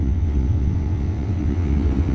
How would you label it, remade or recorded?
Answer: remade